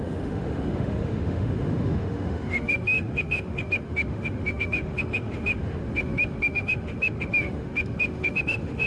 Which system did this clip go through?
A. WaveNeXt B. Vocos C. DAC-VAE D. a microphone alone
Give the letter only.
C